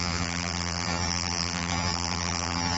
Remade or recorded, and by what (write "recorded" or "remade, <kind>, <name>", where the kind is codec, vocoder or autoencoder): remade, vocoder, BigVGAN v2